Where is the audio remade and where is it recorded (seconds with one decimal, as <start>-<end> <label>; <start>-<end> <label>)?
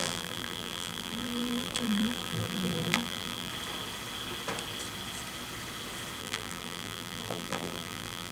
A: 0.0-3.5 remade; 3.5-6.2 recorded; 6.2-8.3 remade